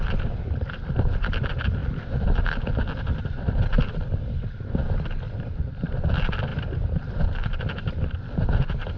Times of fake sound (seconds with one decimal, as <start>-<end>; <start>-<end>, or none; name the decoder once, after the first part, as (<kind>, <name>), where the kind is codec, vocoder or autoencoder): none